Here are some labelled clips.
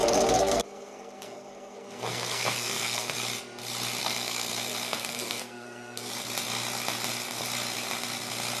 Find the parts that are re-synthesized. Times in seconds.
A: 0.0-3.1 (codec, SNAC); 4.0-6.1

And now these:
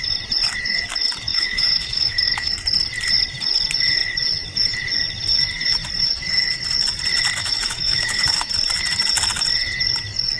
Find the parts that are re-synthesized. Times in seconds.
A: 1.3-2.5 (autoencoder, DAC-VAE); 7.4-8.5

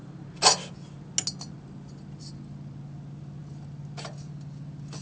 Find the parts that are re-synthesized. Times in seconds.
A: none

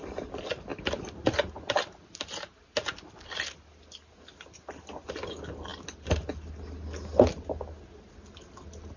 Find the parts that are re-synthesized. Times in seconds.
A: 0.7-1.3 (vocoder, BigVGAN v2); 5.7-6.2